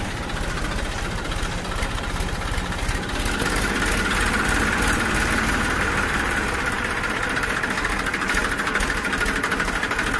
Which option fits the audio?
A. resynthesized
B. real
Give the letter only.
B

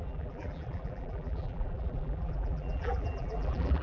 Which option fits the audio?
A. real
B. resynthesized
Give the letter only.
B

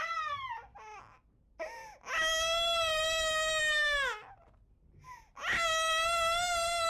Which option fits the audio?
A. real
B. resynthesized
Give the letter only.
A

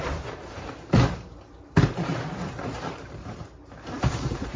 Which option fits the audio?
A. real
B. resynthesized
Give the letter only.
B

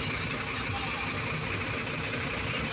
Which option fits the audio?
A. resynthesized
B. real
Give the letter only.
B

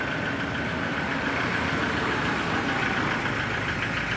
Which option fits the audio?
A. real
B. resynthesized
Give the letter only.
A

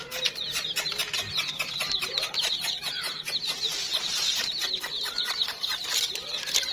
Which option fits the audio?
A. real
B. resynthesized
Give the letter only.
A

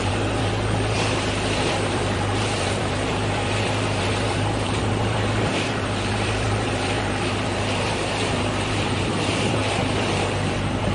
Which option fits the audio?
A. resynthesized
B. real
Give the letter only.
A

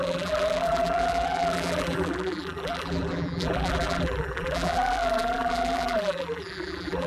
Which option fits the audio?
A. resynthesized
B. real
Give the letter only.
A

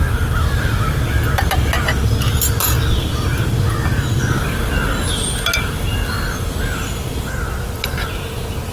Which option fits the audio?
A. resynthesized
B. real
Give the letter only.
B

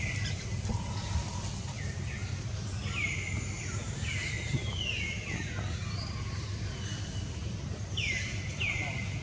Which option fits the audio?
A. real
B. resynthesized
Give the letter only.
B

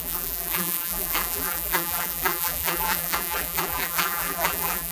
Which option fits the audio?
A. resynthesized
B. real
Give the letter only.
A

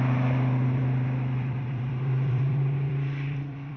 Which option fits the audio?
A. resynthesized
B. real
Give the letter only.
A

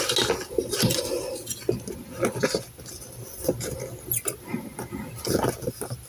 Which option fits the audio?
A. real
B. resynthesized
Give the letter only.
A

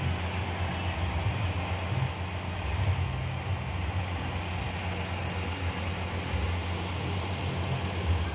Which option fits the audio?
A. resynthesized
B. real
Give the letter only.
B